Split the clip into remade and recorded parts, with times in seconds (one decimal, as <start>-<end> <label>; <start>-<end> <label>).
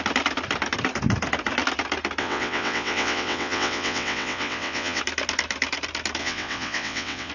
0.0-2.2 recorded; 2.2-5.0 remade; 5.0-6.2 recorded; 6.2-7.3 remade